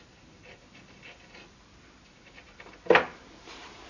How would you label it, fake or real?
real